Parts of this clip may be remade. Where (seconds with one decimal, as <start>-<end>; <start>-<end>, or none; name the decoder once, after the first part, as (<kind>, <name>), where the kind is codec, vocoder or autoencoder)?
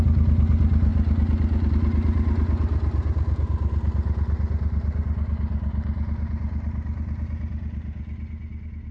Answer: none